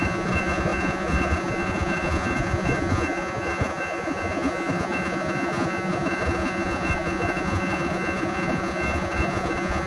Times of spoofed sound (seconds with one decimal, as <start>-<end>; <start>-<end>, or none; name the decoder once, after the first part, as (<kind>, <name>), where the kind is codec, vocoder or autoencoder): 0.0-9.9 (vocoder, Vocos)